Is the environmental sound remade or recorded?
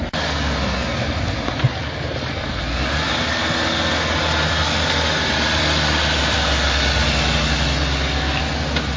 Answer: recorded